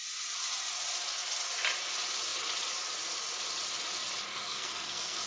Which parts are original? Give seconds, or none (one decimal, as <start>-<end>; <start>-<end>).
0.0-4.3